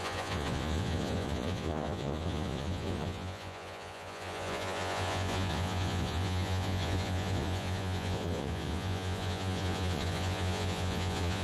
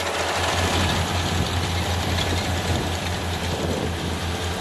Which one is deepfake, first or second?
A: first